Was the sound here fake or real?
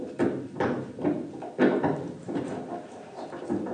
real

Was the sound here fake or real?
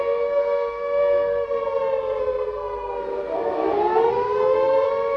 fake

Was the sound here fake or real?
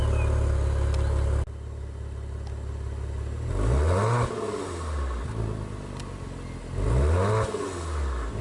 real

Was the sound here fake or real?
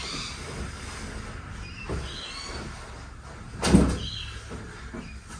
real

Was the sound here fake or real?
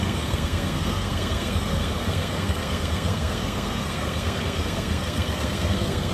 fake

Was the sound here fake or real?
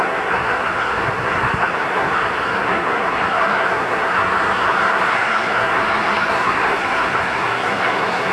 fake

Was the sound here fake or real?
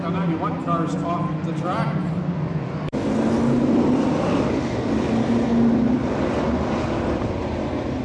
real